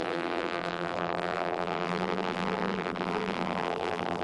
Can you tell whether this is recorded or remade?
remade